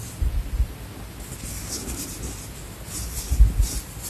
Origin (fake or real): real